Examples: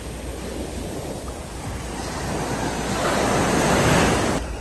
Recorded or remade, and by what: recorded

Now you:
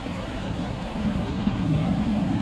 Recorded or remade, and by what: remade, codec, SNAC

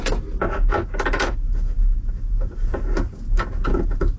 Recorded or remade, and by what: recorded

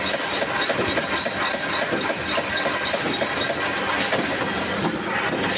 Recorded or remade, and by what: recorded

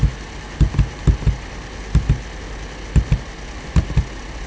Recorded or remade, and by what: recorded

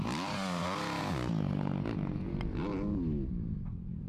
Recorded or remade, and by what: recorded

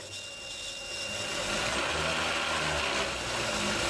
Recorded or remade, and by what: recorded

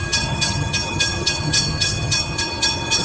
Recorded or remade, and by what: remade, vocoder, HiFi-GAN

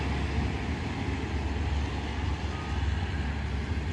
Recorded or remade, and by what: recorded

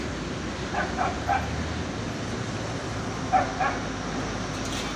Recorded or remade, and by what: recorded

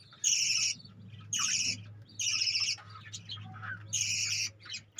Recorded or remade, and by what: recorded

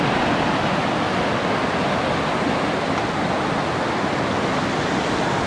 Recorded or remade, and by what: recorded